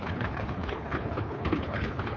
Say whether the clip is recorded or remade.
remade